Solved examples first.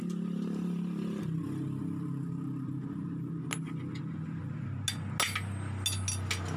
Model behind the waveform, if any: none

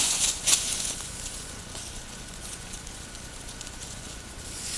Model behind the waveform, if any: vocoder, Vocos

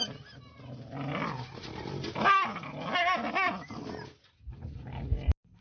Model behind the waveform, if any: none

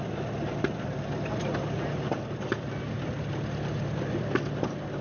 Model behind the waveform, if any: none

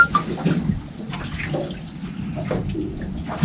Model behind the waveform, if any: none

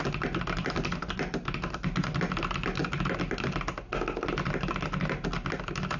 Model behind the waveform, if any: none